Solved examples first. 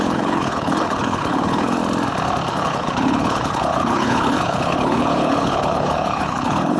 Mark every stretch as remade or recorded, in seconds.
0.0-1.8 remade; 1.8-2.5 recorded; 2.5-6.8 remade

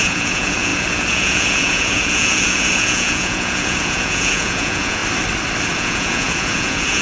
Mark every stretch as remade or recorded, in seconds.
0.0-5.0 remade; 5.0-5.7 recorded; 5.7-7.0 remade

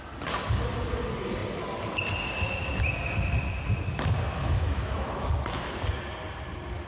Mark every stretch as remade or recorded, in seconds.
0.0-4.3 recorded; 4.3-5.3 remade; 5.3-6.9 recorded

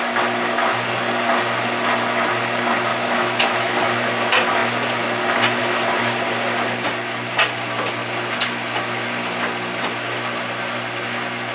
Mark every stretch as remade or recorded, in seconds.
0.0-2.9 recorded; 2.9-3.7 remade; 3.7-11.5 recorded

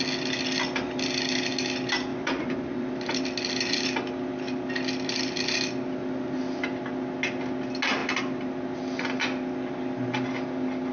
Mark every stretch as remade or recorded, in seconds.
0.0-2.1 recorded; 2.1-2.9 remade; 2.9-10.9 recorded

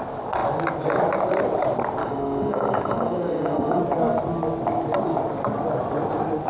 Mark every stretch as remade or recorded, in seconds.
0.0-2.0 recorded; 2.0-3.8 remade; 3.8-6.5 recorded

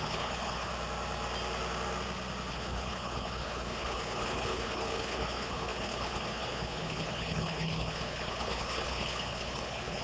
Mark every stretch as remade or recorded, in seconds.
0.0-0.7 remade; 0.7-2.5 recorded; 2.5-10.0 remade